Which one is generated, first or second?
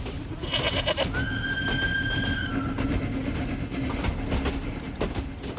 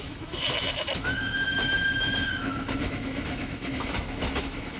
second